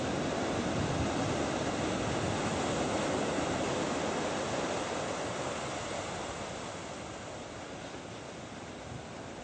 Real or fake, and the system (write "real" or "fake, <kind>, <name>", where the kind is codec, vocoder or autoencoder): real